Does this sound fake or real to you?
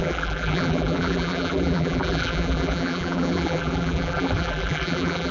fake